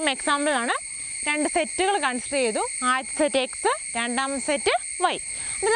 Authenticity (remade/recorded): recorded